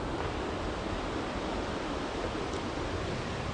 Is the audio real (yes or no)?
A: yes